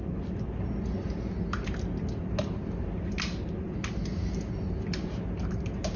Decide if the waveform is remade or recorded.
recorded